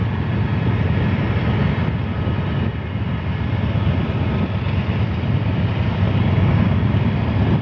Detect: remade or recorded remade